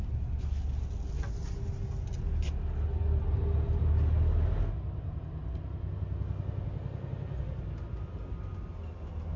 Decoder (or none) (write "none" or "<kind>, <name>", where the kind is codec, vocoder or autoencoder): none